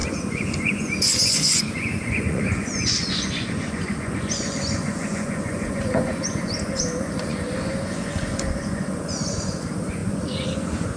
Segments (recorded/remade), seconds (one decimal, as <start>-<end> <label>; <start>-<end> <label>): 0.0-11.0 remade